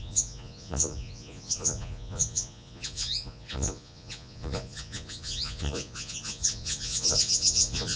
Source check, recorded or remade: remade